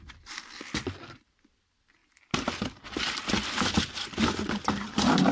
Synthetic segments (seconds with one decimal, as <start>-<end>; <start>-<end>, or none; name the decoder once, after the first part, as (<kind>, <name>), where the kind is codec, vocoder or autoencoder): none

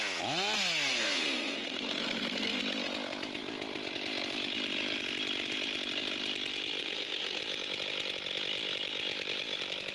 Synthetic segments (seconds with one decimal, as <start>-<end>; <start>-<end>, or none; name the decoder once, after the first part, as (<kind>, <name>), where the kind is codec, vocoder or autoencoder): 0.9-2.6 (codec, SNAC); 6.8-7.4

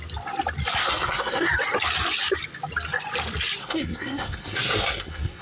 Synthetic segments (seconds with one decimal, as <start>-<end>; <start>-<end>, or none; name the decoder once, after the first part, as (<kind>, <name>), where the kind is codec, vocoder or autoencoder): 0.8-1.5 (codec, SNAC); 3.6-5.4

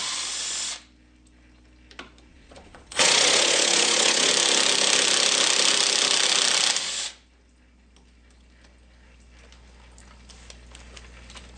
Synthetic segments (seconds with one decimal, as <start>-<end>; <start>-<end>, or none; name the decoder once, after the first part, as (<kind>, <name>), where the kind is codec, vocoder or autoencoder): 2.3-4.3 (vocoder, Vocos)

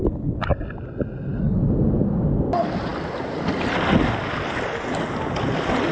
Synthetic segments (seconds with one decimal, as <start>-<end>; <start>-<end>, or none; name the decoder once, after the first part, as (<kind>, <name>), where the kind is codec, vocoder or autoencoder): none

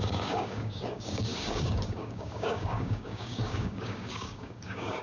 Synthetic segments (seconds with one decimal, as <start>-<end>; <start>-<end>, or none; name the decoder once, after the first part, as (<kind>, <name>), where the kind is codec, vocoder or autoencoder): 0.0-5.0 (codec, DAC)

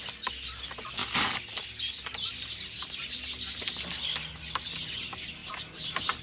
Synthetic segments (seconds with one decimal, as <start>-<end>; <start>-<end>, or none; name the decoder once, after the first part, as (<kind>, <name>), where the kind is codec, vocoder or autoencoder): none

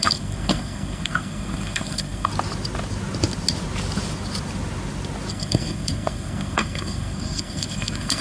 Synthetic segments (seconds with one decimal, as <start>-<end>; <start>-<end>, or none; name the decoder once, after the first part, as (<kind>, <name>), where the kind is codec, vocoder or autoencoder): 0.0-2.3 (codec, SNAC); 5.3-8.2